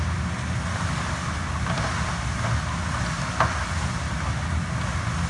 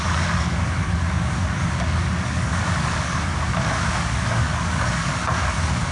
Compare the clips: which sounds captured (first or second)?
first